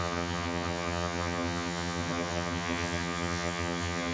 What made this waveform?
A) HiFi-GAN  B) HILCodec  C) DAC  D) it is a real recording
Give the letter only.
A